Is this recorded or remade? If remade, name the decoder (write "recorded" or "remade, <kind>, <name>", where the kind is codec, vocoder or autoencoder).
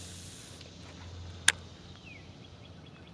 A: recorded